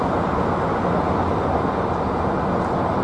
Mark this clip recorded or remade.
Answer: recorded